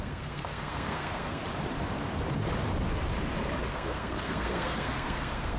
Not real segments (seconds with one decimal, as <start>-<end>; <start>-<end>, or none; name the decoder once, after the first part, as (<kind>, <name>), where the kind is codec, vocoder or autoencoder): 0.0-1.4 (codec, SNAC); 3.7-5.6